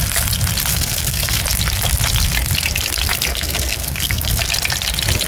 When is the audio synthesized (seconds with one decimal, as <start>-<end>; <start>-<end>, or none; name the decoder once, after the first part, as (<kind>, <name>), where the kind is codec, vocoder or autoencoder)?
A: 0.7-1.4 (codec, SNAC); 3.3-4.4